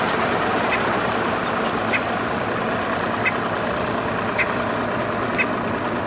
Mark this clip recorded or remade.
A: recorded